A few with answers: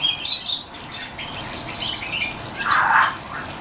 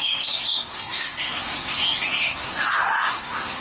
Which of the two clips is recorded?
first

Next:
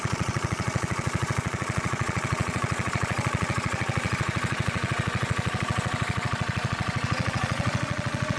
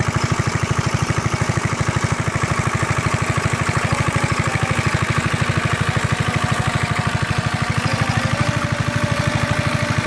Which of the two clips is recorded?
second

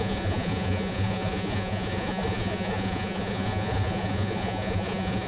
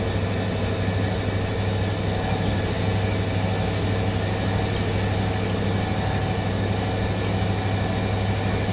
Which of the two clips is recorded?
second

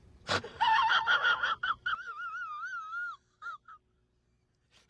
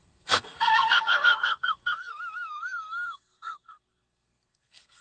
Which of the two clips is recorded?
first